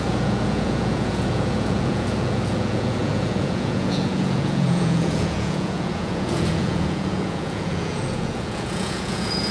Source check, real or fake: fake